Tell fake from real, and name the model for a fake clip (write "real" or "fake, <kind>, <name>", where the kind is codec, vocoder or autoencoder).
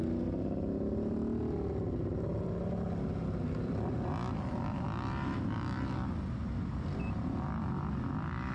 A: real